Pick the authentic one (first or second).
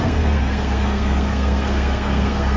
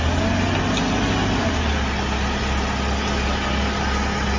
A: second